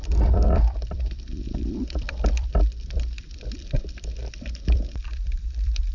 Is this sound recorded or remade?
remade